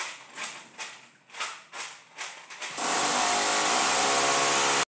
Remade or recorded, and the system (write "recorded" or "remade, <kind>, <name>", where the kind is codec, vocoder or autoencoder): recorded